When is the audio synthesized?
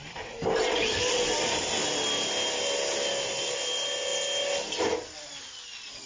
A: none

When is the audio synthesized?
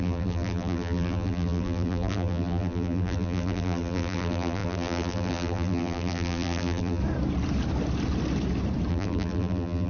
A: 0.0-7.0; 8.9-9.9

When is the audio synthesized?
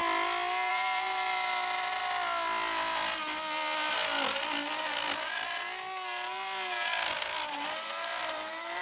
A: 0.7-2.0; 7.1-8.8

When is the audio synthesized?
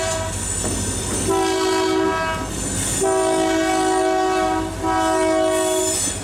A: none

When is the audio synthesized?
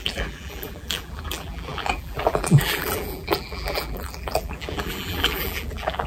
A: 0.0-6.1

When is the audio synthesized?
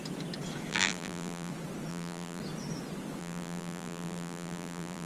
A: 0.7-1.5; 1.9-2.4; 3.2-5.1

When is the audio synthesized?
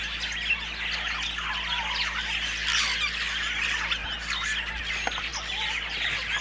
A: none